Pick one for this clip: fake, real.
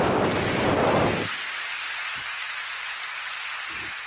real